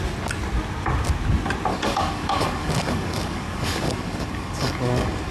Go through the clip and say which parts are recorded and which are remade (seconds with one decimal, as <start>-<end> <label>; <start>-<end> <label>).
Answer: 0.0-1.7 recorded; 1.7-5.3 remade